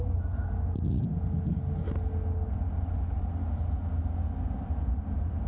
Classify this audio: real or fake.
real